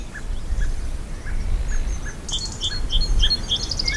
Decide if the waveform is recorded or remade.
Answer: recorded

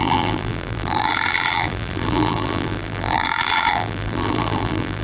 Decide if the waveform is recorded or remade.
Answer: remade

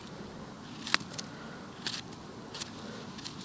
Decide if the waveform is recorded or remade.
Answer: recorded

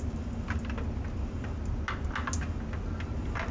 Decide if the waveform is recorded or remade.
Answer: recorded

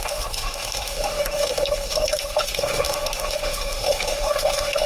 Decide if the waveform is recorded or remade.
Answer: remade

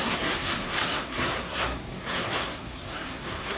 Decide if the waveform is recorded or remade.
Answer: remade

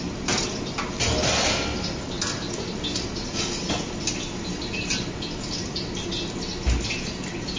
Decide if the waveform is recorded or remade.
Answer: recorded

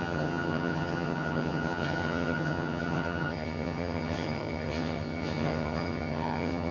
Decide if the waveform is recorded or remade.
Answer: remade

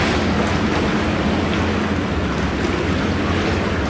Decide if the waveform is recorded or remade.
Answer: recorded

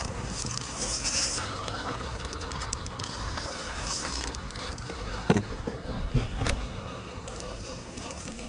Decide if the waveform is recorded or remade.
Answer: remade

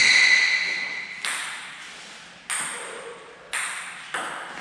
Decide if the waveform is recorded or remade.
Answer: recorded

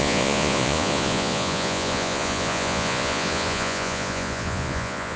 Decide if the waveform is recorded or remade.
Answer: remade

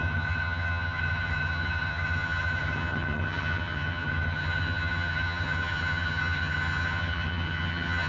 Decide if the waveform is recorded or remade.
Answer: remade